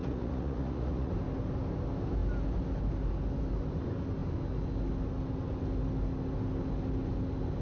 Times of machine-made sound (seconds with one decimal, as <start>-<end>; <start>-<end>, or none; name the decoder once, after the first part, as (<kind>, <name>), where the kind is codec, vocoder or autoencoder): 0.0-1.1 (vocoder, Vocos)